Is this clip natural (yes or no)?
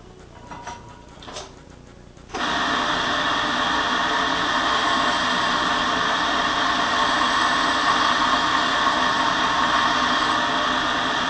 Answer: yes